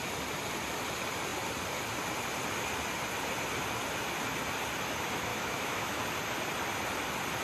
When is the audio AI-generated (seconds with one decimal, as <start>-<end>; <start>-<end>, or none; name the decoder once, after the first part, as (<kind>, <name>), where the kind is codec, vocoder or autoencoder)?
5.3-6.0 (autoencoder, DAC-VAE)